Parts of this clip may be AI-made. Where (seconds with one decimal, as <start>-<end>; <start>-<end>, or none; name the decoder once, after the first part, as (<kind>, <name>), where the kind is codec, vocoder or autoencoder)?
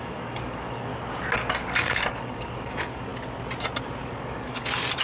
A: 0.0-0.9 (codec, DAC); 1.6-3.1; 4.0-5.0